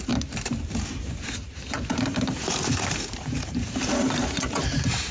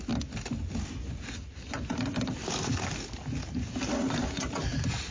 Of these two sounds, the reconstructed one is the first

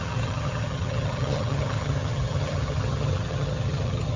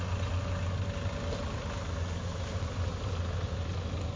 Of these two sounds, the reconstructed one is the first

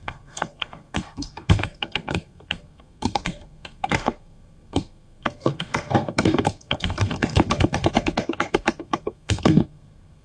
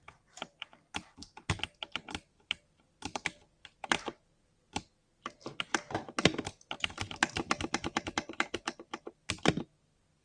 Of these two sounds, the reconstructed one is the first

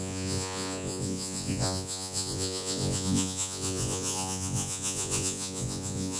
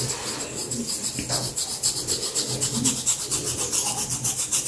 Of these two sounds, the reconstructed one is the first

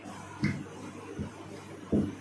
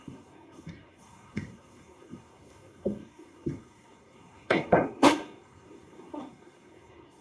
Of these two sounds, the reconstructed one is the second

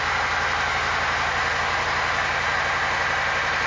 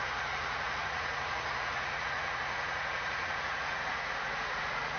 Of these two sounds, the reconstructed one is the second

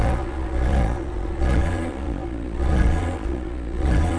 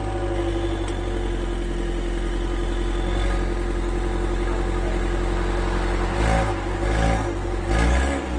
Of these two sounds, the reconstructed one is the first